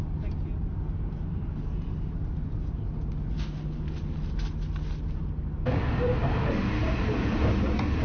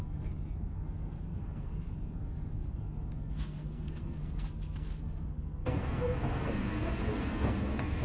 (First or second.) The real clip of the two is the first